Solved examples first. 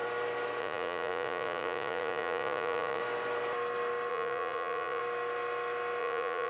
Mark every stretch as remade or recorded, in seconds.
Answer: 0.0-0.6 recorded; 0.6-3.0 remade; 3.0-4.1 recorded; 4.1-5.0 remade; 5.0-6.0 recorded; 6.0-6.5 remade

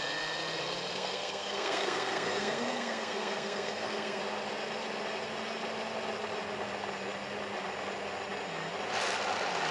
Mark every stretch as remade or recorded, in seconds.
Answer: 0.0-0.9 recorded; 0.9-4.2 remade; 4.2-9.7 recorded

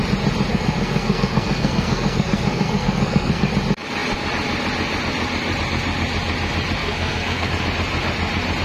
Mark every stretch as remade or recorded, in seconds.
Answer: 0.0-0.5 recorded; 0.5-3.5 remade; 3.5-6.8 recorded; 6.8-7.5 remade; 7.5-8.6 recorded

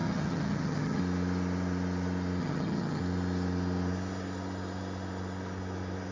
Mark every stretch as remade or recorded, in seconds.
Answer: 0.0-1.0 remade; 1.0-2.4 recorded; 2.4-3.0 remade; 3.0-6.1 recorded

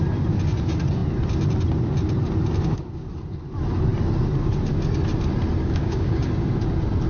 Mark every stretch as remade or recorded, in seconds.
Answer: 0.0-5.6 recorded; 5.6-6.3 remade; 6.3-7.1 recorded

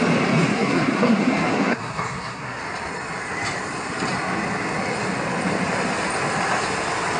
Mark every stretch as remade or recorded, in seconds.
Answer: 0.0-0.5 recorded; 0.5-2.6 remade; 2.6-7.2 recorded

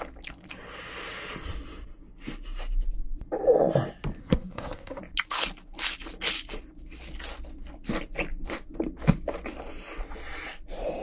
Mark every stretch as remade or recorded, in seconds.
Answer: 0.0-4.2 recorded; 4.2-5.0 remade; 5.0-11.0 recorded

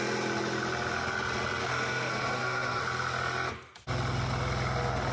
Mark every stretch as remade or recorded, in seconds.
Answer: 0.0-1.6 recorded; 1.6-2.8 remade; 2.8-5.1 recorded